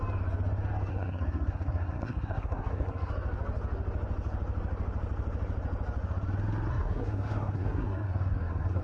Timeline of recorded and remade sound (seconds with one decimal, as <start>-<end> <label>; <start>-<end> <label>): 0.0-0.9 recorded; 0.9-3.1 remade; 3.1-6.7 recorded; 6.7-8.8 remade